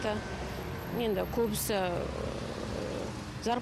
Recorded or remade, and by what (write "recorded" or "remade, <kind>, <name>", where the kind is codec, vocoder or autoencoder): recorded